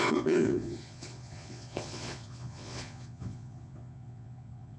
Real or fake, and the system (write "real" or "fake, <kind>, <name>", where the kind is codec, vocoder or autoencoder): fake, vocoder, Vocos